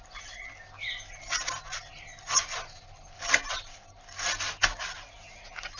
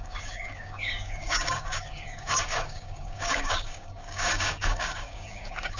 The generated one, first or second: second